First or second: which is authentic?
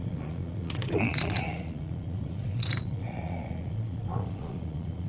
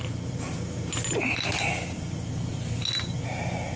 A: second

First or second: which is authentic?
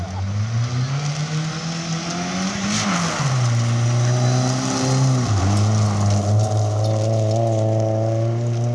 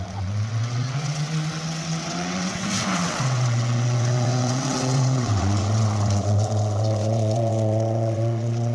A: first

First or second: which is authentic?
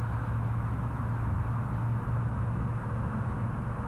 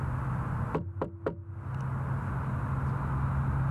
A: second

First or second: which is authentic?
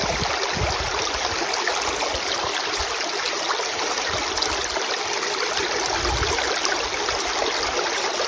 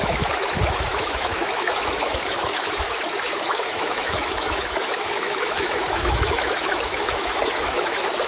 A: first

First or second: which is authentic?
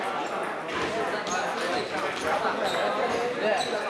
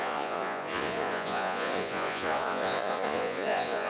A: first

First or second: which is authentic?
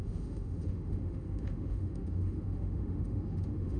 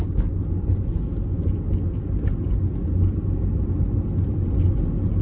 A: second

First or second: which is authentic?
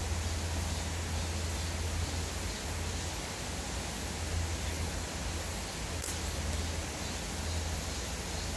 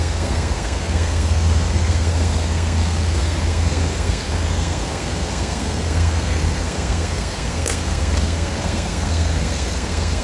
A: first